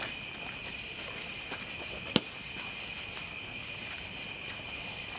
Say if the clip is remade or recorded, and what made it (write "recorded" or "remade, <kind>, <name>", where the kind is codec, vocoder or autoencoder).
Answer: recorded